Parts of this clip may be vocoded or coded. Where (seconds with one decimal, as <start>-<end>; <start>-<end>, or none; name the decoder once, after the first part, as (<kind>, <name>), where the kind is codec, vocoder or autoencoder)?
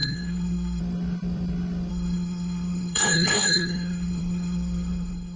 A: 0.0-0.8 (codec, SNAC); 1.9-5.4